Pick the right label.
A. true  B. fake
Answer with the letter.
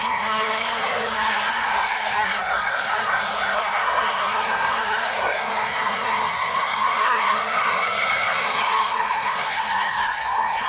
B